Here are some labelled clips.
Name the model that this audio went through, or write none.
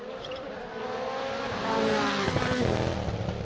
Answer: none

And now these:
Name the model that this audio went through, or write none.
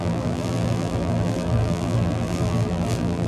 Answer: vocoder, BigVGAN v2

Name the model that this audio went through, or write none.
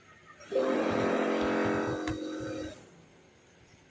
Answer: none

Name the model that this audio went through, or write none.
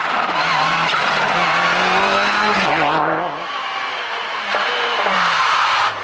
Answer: vocoder, BigVGAN v2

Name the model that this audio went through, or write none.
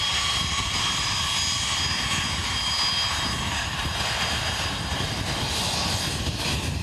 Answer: none